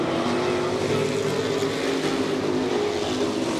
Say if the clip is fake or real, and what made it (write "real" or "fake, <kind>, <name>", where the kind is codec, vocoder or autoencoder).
real